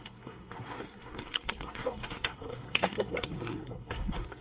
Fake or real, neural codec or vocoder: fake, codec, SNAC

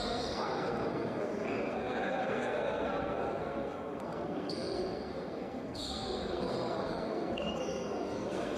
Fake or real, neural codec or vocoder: fake, codec, SNAC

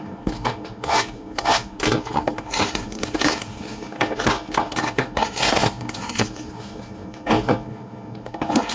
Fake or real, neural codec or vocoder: fake, codec, SNAC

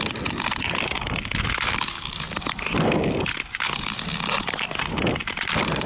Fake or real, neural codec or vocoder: real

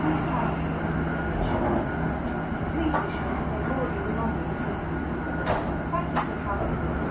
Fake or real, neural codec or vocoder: real